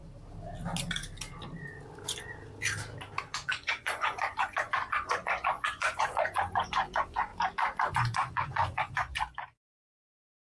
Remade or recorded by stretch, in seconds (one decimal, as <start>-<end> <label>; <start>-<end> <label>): 0.0-3.2 recorded; 3.2-7.3 remade; 7.3-7.9 recorded; 7.9-10.5 remade